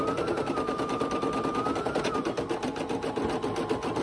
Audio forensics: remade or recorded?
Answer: recorded